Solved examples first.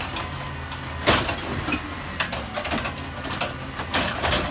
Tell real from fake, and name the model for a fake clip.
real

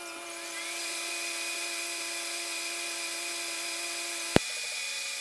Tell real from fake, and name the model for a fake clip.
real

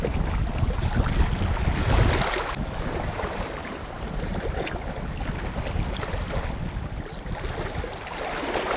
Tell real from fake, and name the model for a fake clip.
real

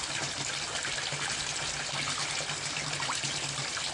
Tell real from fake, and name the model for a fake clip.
real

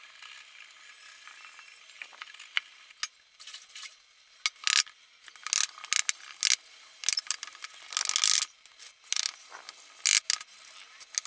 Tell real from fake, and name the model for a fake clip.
real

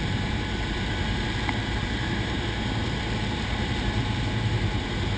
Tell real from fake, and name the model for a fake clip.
fake, vocoder, BigVGAN v2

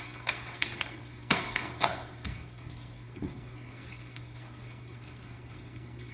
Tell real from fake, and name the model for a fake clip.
fake, codec, SNAC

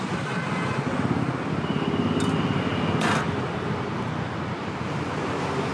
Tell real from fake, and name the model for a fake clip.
real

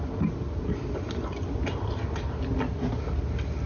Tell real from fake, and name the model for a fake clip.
real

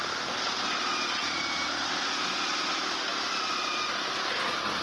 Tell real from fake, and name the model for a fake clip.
real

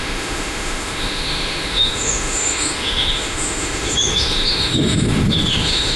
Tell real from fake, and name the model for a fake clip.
fake, autoencoder, DAC-VAE